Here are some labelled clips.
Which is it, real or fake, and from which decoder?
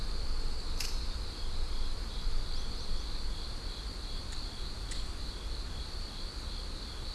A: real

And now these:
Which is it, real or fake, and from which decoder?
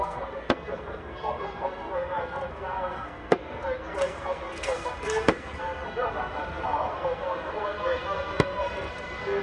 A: fake, codec, SNAC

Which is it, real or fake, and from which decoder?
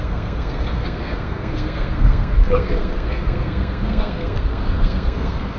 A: fake, codec, SNAC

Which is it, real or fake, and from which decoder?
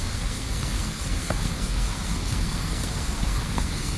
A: fake, codec, SNAC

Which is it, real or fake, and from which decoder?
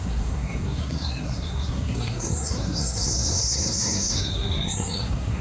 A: fake, codec, SNAC